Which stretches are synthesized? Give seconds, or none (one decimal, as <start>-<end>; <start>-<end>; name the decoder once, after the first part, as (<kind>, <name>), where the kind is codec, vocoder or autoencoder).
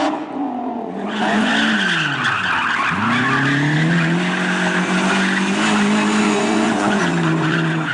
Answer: 0.0-1.5 (vocoder, Vocos); 6.2-7.9